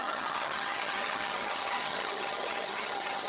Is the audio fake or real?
fake